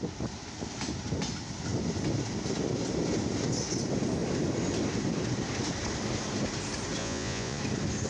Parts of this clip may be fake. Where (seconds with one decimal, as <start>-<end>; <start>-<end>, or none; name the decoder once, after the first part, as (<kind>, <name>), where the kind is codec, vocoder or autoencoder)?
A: 7.0-7.6 (vocoder, Vocos)